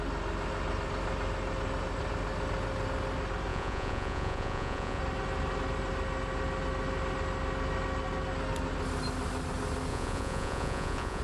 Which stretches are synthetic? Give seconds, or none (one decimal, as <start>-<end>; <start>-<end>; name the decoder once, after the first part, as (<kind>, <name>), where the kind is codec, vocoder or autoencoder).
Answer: 3.5-5.0 (vocoder, Vocos); 9.9-11.2